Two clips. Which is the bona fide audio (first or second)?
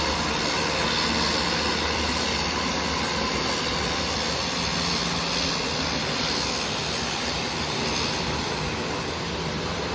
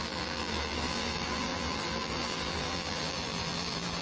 first